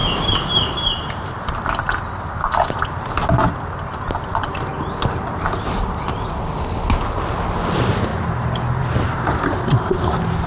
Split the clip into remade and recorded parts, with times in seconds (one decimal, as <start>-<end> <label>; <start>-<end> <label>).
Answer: 0.0-2.0 remade; 2.0-8.1 recorded; 8.1-8.8 remade; 8.8-10.5 recorded